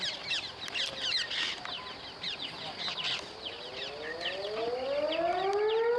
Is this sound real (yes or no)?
yes